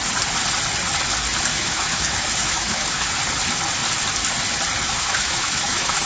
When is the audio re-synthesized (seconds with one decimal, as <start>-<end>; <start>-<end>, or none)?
1.5-3.1; 4.8-6.1